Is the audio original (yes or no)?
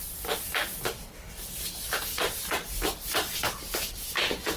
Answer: yes